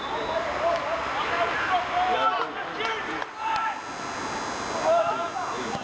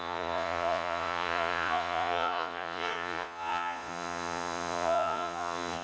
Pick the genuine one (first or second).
first